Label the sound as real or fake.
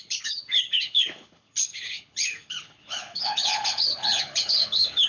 fake